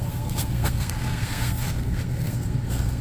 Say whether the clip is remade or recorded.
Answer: remade